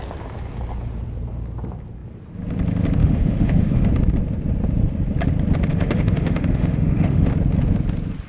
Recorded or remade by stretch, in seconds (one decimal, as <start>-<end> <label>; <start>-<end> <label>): 0.0-3.0 recorded; 3.0-3.9 remade; 3.9-5.7 recorded; 5.7-7.3 remade; 7.3-8.3 recorded